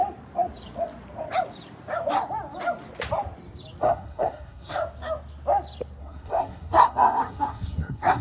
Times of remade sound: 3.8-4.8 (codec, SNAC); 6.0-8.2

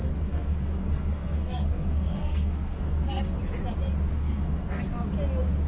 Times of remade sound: 0.0-3.4 (codec, SNAC); 4.1-4.8

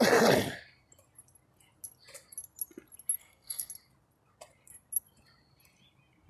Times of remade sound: 3.2-3.7 (codec, SNAC)

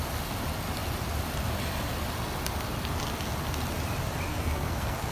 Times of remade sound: 4.3-5.1 (codec, SNAC)

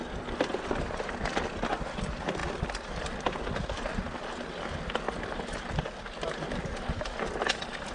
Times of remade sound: none

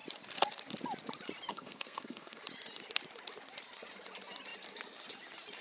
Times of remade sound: 1.5-2.4 (codec, SNAC)

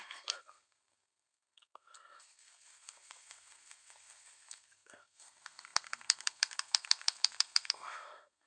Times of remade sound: 0.0-8.5 (codec, SNAC)

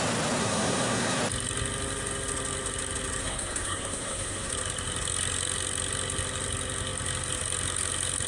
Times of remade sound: 0.4-1.2 (codec, SNAC); 3.2-4.5